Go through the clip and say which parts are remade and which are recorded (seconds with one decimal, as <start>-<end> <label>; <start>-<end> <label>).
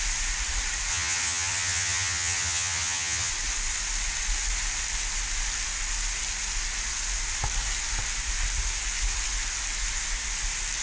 0.0-0.9 recorded; 0.9-3.3 remade; 3.3-10.8 recorded